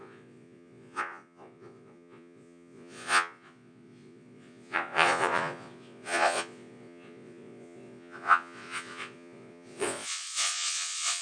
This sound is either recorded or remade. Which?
remade